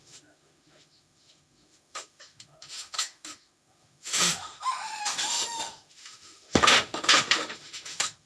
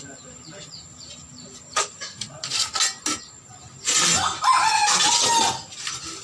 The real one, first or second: second